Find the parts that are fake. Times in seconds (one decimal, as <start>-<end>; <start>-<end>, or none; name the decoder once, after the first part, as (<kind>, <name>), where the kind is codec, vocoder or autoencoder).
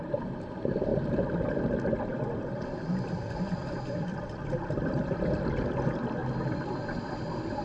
none